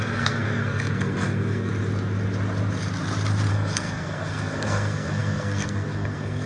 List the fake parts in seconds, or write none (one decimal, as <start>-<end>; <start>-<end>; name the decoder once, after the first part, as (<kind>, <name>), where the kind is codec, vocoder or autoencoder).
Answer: 0.0-1.7 (codec, SNAC); 3.5-6.5